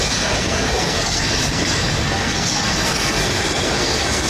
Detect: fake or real fake